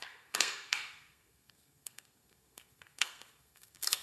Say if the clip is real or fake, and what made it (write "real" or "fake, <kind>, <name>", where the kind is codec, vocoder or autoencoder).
fake, codec, SNAC